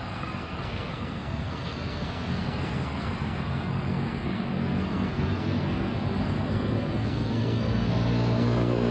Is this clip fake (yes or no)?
yes